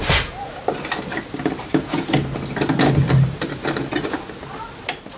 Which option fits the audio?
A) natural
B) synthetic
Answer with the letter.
A